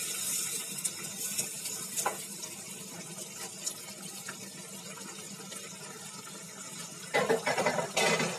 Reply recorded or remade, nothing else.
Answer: recorded